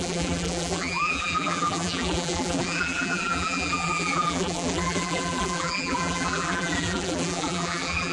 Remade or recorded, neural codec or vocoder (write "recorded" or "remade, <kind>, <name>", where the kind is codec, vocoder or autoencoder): remade, vocoder, BigVGAN v2